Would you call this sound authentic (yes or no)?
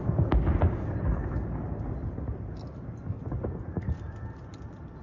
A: yes